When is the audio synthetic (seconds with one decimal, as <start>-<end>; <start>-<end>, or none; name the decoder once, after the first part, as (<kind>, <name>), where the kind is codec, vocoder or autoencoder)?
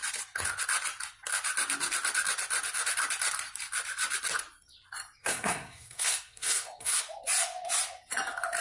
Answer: 5.2-7.0 (codec, SNAC)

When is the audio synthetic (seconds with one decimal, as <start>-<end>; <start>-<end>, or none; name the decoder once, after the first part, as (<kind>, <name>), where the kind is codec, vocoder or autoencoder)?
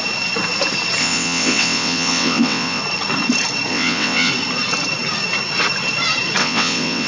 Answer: 1.0-2.8 (vocoder, WaveNeXt); 3.7-4.3; 6.4-7.1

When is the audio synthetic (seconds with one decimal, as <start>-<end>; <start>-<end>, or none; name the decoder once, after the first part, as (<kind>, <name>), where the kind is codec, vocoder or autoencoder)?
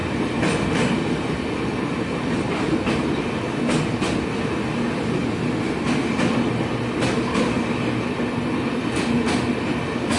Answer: 0.0-1.4 (vocoder, BigVGAN v2)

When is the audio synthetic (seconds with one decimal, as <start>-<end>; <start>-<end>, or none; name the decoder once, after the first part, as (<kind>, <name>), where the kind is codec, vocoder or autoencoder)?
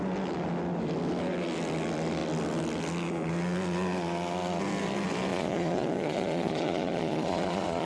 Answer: 5.3-7.9 (vocoder, Vocos)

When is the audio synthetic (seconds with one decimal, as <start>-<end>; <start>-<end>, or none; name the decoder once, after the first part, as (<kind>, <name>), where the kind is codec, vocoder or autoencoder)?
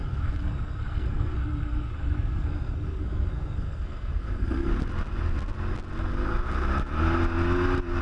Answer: 0.0-4.7 (codec, SNAC)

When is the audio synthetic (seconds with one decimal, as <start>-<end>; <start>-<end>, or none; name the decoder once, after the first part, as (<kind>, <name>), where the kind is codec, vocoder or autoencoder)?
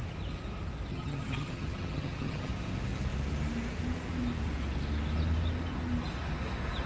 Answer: 0.9-2.5 (vocoder, HiFi-GAN)